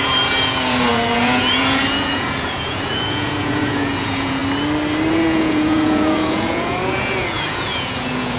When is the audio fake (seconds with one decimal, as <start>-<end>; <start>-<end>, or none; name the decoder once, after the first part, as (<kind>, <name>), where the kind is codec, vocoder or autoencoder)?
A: 0.0-4.4 (vocoder, Vocos); 5.1-8.4